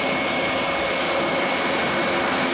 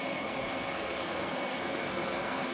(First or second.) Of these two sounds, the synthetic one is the second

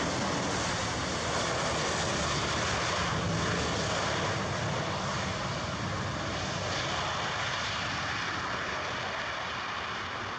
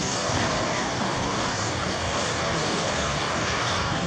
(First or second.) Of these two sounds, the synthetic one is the second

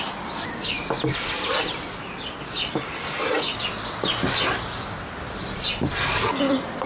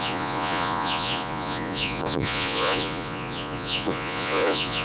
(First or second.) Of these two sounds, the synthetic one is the second